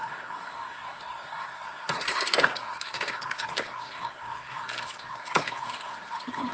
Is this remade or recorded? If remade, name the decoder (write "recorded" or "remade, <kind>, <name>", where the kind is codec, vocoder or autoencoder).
remade, codec, SNAC